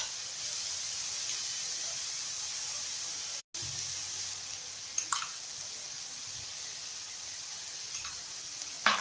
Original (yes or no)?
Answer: yes